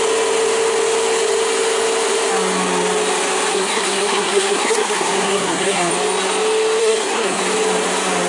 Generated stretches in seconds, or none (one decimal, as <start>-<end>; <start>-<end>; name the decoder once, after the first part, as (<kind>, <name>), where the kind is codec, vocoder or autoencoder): 3.5-5.9 (codec, SNAC); 6.8-7.4